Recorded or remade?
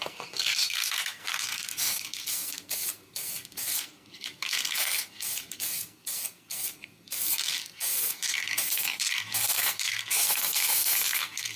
remade